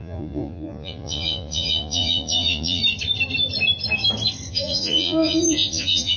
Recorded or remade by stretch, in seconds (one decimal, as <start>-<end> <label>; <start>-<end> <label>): 0.0-2.8 remade; 2.8-4.5 recorded; 4.5-6.2 remade